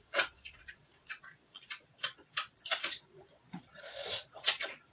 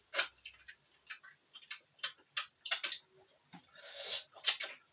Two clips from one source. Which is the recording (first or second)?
second